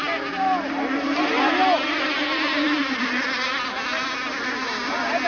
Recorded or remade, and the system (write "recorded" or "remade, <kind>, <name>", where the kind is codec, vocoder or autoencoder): recorded